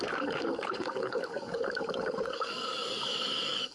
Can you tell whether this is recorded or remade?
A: remade